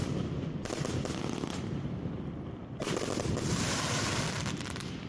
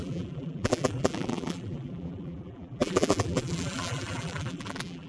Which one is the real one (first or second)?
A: first